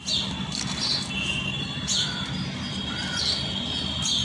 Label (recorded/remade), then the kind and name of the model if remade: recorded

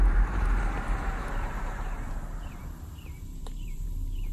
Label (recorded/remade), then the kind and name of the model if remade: remade, vocoder, BigVGAN v2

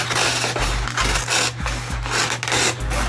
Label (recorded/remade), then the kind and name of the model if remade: recorded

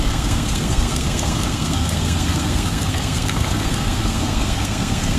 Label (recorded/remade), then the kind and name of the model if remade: remade, codec, SNAC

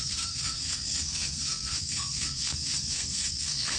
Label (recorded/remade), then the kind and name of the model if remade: remade, codec, SNAC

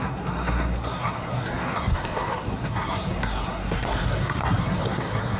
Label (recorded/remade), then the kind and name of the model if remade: remade, codec, SNAC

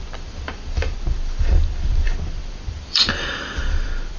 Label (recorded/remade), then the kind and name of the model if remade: remade, vocoder, BigVGAN v2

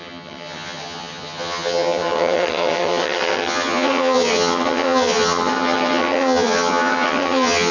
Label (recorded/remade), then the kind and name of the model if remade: remade, vocoder, HiFi-GAN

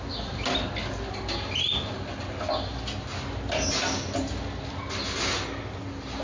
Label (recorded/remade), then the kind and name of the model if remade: recorded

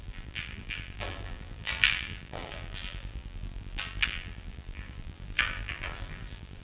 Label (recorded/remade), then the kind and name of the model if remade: remade, vocoder, BigVGAN v2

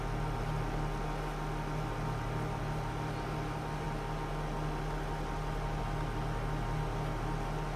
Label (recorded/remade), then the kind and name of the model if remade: recorded